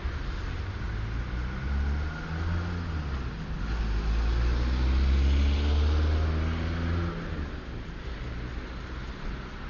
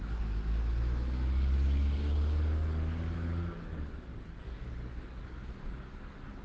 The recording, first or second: first